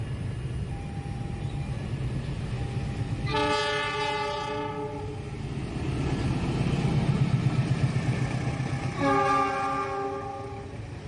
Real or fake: real